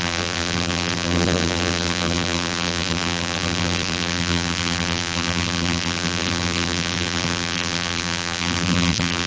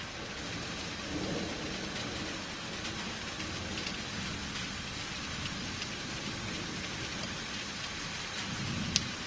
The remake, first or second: first